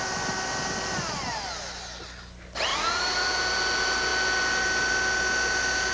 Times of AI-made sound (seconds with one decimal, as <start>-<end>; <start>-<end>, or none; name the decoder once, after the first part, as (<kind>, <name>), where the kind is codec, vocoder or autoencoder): 2.7-3.4 (vocoder, Vocos)